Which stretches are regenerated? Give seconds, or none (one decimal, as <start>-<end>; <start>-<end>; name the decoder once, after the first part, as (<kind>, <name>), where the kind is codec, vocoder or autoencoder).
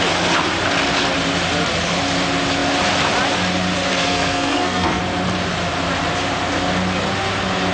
3.9-5.0 (codec, SNAC)